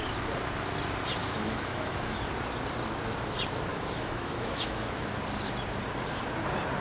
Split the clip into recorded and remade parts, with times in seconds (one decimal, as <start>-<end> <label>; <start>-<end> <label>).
0.0-1.2 recorded; 1.2-2.2 remade; 2.2-3.7 recorded; 3.7-5.1 remade; 5.1-6.8 recorded